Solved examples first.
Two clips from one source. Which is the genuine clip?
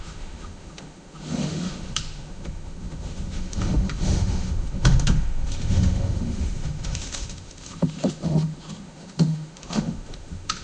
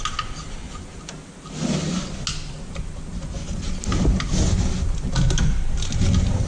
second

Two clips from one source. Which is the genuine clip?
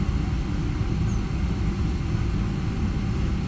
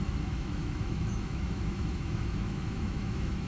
first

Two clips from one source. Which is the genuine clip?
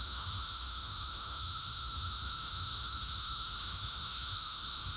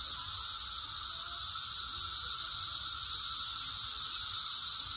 second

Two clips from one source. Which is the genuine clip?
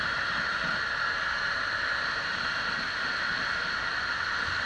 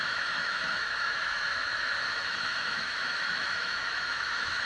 first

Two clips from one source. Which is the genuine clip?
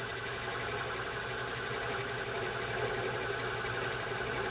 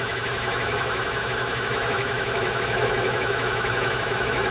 first